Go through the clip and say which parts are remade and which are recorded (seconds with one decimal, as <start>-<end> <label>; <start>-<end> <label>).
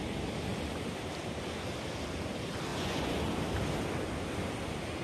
0.0-2.7 recorded; 2.7-3.3 remade; 3.3-5.0 recorded